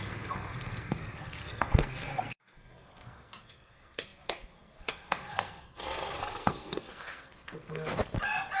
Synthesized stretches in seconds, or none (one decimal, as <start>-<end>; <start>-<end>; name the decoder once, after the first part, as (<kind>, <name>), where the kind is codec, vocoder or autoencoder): 0.0-8.0 (codec, SNAC)

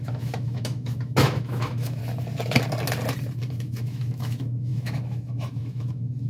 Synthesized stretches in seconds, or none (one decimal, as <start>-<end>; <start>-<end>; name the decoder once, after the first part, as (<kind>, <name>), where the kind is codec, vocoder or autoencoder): 0.0-2.0 (autoencoder, DAC-VAE); 3.5-6.3

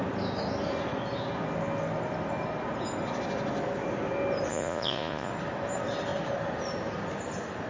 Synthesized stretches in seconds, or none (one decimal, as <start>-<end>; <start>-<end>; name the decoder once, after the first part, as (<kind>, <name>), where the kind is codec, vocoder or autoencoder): 4.5-5.3 (vocoder, Vocos)

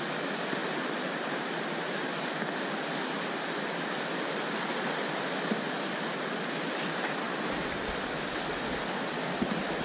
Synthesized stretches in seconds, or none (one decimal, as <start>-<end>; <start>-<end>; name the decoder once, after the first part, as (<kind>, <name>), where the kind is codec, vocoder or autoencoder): none

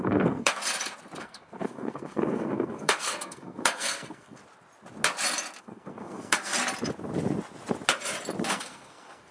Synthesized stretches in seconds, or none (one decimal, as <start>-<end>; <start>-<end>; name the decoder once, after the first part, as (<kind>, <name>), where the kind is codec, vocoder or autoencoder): 0.0-0.6 (codec, SNAC); 1.2-4.4; 5.6-6.5; 8.5-9.3

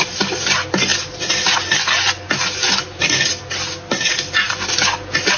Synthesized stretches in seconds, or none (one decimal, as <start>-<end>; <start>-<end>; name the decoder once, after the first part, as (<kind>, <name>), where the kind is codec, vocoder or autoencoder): none

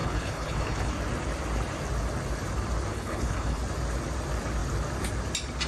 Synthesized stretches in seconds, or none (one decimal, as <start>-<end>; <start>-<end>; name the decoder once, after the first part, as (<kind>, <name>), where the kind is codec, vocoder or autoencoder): 0.0-0.9 (codec, HILCodec); 2.9-3.6

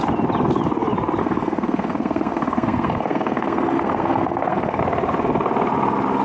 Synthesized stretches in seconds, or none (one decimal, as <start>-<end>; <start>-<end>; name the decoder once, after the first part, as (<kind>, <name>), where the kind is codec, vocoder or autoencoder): 1.2-4.8 (codec, SNAC)